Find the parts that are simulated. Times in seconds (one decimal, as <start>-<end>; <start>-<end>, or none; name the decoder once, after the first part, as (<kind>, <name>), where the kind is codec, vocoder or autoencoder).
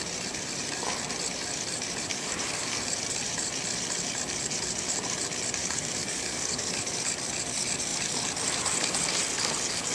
2.1-2.8 (codec, DAC); 5.6-6.9